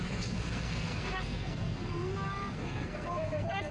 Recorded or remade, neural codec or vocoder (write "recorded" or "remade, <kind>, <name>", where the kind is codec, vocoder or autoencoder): remade, codec, SNAC